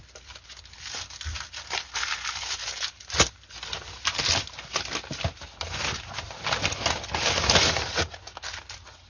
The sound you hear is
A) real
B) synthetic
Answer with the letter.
A